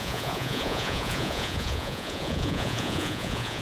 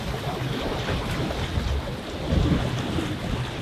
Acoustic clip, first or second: second